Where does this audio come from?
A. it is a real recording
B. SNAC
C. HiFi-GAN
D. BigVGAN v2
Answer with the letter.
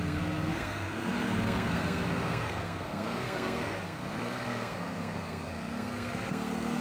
B